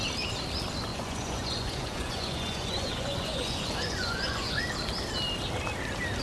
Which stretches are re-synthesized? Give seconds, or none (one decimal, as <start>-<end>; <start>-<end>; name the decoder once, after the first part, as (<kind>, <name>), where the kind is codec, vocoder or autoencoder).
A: 0.9-4.6 (vocoder, Vocos)